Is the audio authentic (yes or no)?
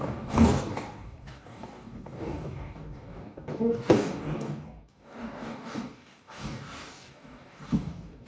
no